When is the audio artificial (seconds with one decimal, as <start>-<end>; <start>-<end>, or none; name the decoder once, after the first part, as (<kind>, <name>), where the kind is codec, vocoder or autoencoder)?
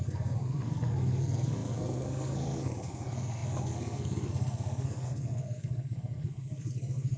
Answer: 0.0-7.2 (codec, SNAC)